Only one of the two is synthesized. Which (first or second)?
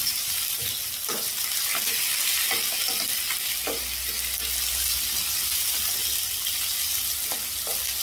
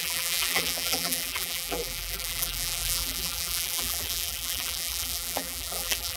second